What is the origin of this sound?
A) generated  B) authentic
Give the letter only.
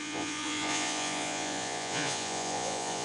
A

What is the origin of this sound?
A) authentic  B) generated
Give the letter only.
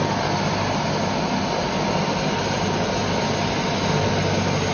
A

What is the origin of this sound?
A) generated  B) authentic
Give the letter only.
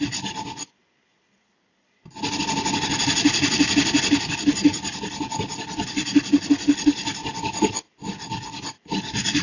B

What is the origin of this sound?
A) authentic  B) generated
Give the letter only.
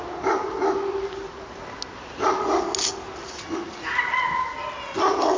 A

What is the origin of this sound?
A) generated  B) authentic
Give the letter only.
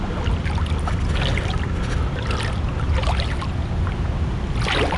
B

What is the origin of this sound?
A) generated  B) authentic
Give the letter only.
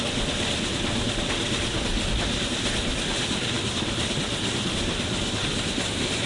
B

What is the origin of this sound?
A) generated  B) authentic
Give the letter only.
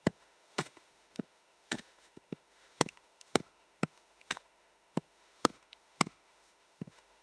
A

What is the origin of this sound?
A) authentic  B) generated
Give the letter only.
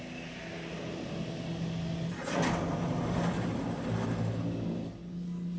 A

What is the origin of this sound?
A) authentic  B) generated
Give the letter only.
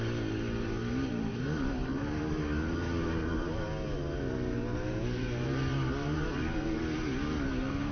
A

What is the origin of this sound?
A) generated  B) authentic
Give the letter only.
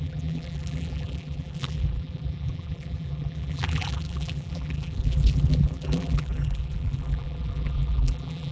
A